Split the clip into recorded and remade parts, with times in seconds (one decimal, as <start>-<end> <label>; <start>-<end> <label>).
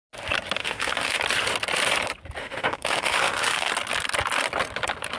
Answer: 0.0-0.6 recorded; 0.6-1.2 remade; 1.2-2.4 recorded; 2.4-3.7 remade; 3.7-5.2 recorded